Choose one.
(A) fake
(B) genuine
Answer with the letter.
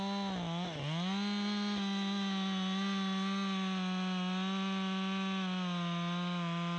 B